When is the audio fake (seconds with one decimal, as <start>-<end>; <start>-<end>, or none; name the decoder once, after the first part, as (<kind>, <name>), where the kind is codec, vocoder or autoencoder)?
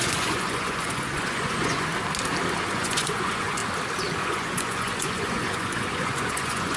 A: 0.0-1.9 (vocoder, Vocos); 2.7-3.6; 4.2-6.8